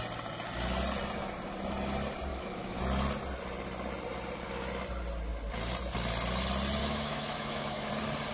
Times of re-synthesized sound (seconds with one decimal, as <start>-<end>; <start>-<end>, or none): 2.3-2.8; 6.8-7.9